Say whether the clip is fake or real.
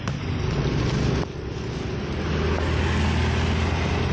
real